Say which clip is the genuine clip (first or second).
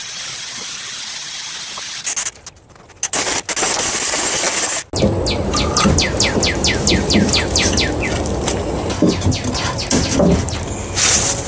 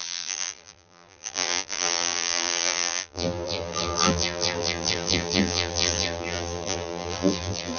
first